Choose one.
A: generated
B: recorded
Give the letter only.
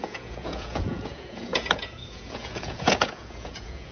A